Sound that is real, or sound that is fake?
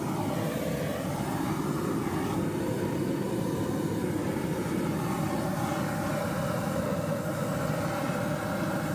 real